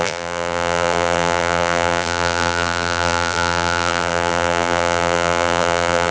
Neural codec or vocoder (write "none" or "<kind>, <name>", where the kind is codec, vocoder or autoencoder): vocoder, BigVGAN v2